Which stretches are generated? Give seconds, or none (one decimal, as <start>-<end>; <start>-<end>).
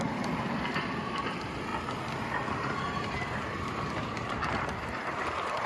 0.0-1.7; 3.1-5.7